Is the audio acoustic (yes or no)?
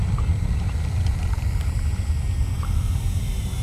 yes